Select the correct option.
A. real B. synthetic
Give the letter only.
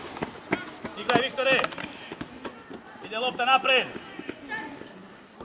A